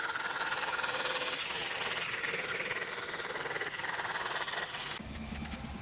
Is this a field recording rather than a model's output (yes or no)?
yes